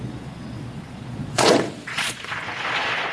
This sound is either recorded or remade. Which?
remade